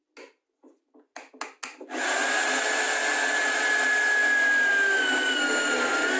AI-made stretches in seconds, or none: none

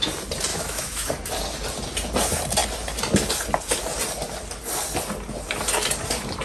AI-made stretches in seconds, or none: 0.5-1.1

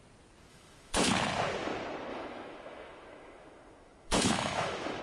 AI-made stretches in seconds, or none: 0.5-1.1; 2.1-5.0